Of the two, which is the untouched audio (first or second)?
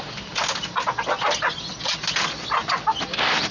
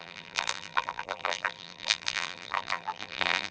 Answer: first